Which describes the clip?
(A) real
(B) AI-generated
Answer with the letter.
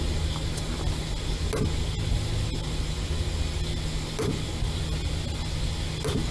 A